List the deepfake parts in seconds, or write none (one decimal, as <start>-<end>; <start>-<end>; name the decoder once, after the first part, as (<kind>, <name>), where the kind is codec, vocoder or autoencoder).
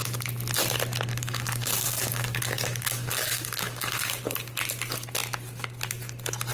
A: 1.1-4.2 (codec, DAC)